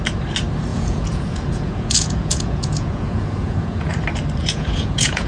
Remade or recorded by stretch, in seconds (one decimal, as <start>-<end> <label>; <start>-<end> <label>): 0.0-0.7 recorded; 0.7-3.9 remade; 3.9-4.4 recorded; 4.4-5.3 remade